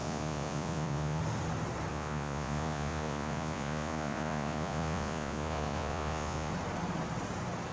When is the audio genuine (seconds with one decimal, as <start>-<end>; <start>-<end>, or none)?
1.2-1.9; 6.5-7.7